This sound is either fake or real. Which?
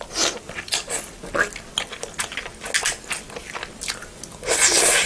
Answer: real